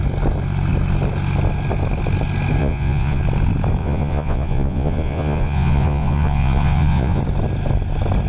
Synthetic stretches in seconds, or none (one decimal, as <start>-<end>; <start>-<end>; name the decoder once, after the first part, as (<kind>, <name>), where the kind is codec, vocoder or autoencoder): 2.6-3.2 (vocoder, Vocos); 3.8-7.2